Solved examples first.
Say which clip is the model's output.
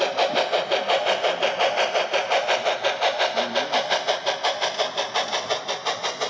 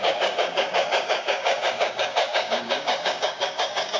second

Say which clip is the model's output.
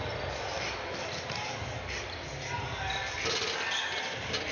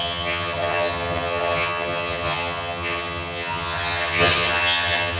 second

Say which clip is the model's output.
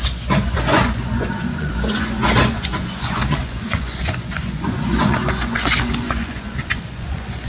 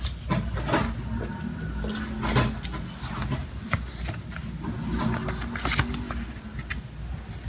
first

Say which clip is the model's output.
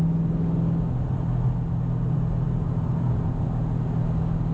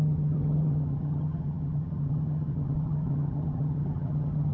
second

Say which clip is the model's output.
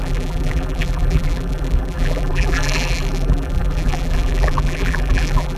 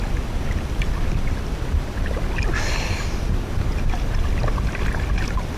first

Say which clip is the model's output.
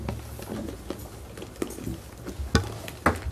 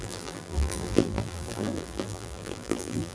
second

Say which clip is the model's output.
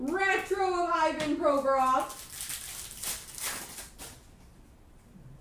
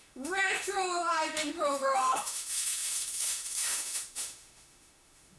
second